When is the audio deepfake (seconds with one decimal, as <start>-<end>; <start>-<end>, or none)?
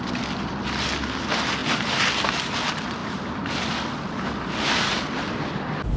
none